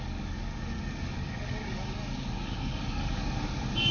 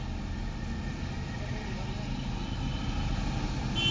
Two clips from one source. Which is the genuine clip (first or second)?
second